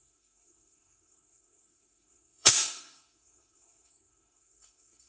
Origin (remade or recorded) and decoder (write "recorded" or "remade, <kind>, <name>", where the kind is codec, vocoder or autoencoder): remade, codec, SNAC